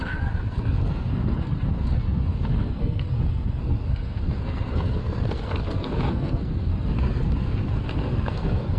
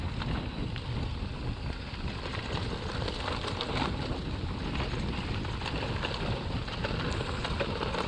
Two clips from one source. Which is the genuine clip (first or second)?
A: second